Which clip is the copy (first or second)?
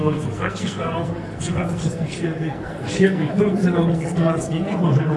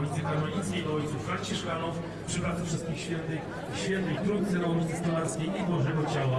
first